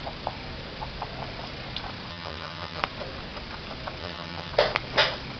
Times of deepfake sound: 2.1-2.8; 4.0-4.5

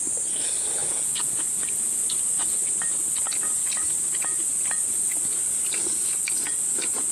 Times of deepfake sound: 0.8-1.4

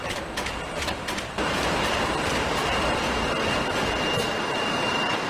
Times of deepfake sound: 0.0-2.6; 4.5-5.3